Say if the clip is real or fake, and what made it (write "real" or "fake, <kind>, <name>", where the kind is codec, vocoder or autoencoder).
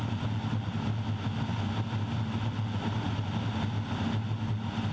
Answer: real